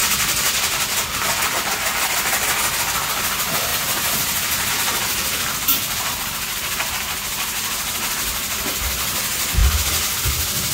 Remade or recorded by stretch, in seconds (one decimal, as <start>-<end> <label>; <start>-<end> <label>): 0.0-3.7 recorded; 3.7-4.7 remade; 4.7-10.7 recorded